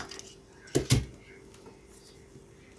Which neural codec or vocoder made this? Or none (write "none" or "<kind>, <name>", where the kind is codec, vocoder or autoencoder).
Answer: none